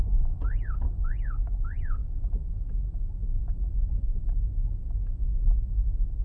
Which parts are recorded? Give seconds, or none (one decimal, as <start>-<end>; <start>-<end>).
0.0-6.2